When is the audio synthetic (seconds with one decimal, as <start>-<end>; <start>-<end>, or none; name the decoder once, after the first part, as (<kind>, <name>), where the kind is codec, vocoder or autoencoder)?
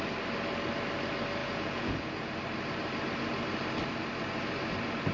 1.4-2.3 (vocoder, Vocos)